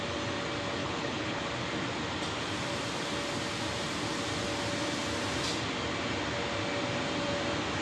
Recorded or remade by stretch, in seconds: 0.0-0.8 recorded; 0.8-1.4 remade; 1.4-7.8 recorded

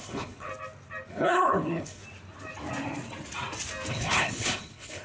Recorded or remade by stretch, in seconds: 0.0-0.5 remade; 0.5-1.1 recorded; 1.1-2.0 remade; 2.0-3.9 recorded; 3.9-5.0 remade

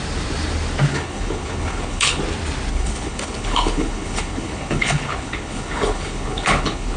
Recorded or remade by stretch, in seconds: 0.0-0.9 recorded; 0.9-2.2 remade; 2.2-2.7 recorded; 2.7-7.0 remade

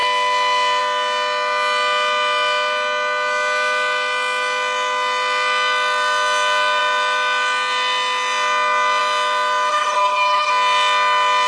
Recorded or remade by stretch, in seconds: 0.0-9.7 recorded; 9.7-10.5 remade; 10.5-11.5 recorded